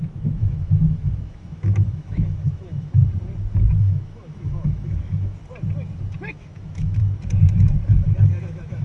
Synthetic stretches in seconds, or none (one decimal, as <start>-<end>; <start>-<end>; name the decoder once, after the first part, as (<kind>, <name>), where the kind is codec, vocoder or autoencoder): 0.0-3.0 (autoencoder, DAC-VAE); 3.8-5.4; 6.3-7.0; 8.4-8.8

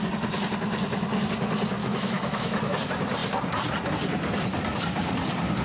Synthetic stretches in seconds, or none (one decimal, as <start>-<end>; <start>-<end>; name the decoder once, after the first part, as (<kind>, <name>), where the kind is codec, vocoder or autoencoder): 1.8-2.8 (autoencoder, DAC-VAE)

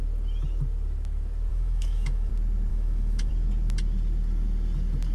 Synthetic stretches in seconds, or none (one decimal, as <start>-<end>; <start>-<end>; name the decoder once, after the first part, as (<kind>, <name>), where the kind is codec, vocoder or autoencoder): 1.5-2.3 (autoencoder, DAC-VAE); 2.7-3.3

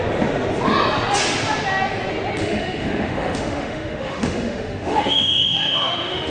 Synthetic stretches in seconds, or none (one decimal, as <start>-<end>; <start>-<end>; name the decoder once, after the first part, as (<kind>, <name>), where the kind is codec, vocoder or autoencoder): 2.4-6.3 (autoencoder, DAC-VAE)

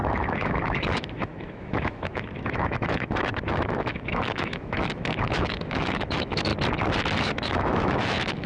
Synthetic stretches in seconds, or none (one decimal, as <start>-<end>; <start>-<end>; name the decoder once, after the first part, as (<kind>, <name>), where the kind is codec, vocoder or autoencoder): 0.0-6.5 (autoencoder, DAC-VAE); 7.2-8.5

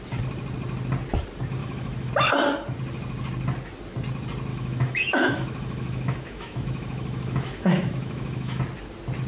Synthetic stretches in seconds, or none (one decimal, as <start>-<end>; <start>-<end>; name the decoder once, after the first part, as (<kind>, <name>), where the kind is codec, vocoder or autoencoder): 1.6-2.1 (autoencoder, DAC-VAE); 4.5-8.6

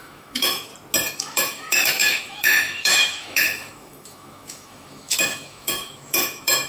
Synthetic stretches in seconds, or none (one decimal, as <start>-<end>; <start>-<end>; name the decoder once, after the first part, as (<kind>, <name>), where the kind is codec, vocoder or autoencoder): 0.0-0.7 (autoencoder, DAC-VAE); 1.2-6.7

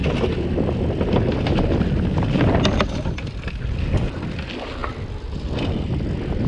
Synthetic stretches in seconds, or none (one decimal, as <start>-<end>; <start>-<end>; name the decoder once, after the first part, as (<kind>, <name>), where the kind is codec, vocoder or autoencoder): none